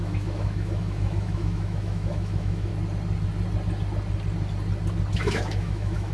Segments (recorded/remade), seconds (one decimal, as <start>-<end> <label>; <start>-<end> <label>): 0.0-2.7 remade; 2.7-5.1 recorded; 5.1-6.1 remade